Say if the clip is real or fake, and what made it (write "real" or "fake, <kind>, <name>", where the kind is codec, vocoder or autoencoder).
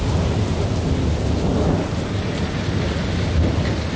real